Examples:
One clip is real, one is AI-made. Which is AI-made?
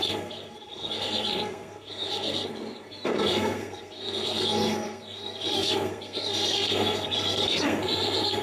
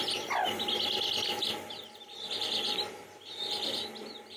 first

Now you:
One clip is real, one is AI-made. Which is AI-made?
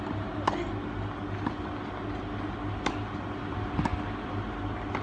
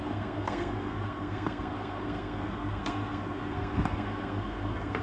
second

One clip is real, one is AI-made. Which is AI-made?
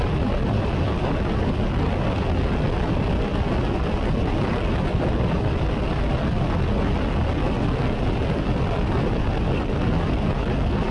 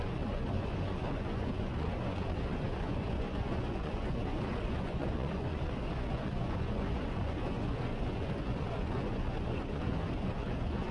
second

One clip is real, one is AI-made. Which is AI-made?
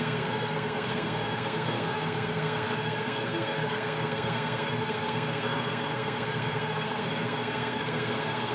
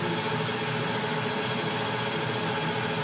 first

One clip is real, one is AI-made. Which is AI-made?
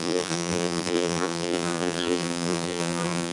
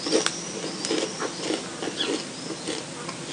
first